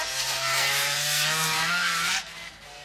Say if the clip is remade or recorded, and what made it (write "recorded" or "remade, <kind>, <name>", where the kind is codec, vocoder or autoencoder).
remade, codec, SNAC